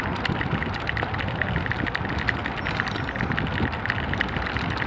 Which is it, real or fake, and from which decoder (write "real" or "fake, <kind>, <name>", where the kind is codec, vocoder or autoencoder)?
real